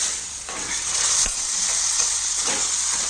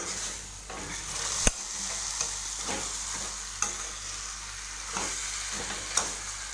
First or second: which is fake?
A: first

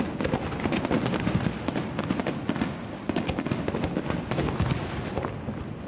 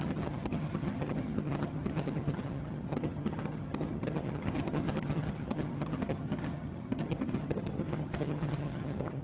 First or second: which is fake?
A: second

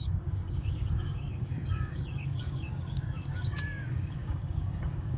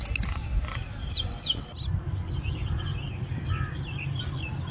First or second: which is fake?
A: first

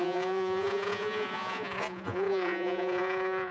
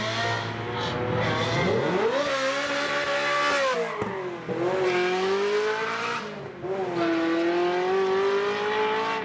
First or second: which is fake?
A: first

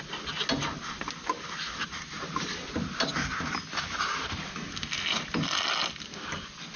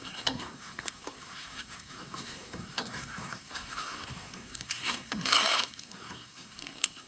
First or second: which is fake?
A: second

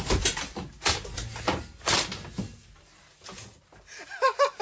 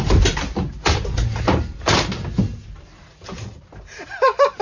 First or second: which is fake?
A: second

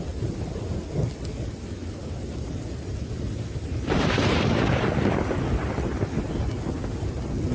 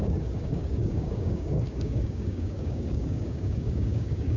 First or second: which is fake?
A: second